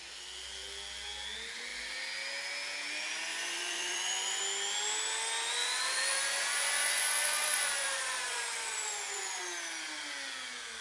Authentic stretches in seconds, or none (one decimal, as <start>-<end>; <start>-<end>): 0.0-3.3; 4.4-5.6; 9.4-10.8